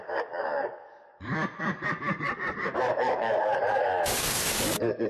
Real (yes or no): no